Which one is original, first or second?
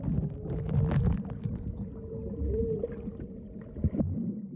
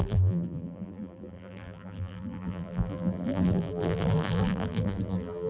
first